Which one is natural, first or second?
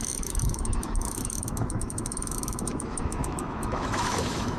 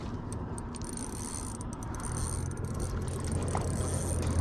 second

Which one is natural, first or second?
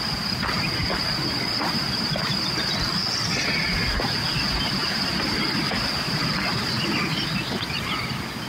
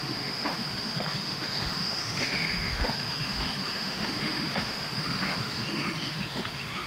first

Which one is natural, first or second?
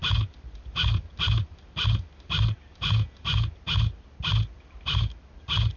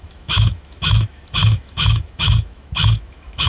first